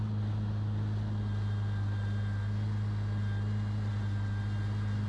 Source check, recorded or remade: recorded